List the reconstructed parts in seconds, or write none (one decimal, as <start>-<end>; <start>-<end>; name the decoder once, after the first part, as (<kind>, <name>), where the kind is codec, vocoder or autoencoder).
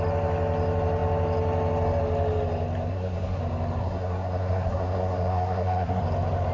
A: 2.9-3.4 (codec, SNAC); 3.8-6.0